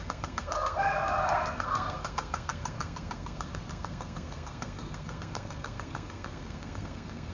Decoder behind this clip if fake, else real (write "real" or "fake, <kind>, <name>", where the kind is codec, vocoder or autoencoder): fake, codec, SNAC